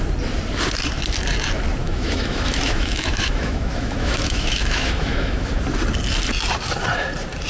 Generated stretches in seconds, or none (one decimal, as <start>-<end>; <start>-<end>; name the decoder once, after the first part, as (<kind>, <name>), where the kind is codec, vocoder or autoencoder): 1.8-5.5 (autoencoder, DAC-VAE)